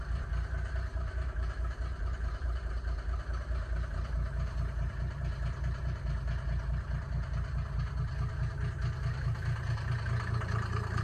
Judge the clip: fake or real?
fake